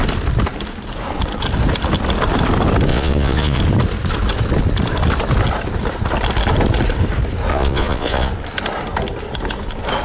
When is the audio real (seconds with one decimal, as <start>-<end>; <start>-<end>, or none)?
0.0-2.9; 3.6-7.5; 8.3-10.0